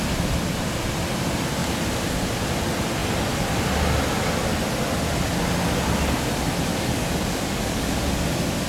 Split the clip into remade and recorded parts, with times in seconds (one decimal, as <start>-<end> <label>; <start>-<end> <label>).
0.0-6.7 recorded; 6.7-7.9 remade; 7.9-8.7 recorded